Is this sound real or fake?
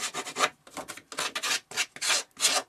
real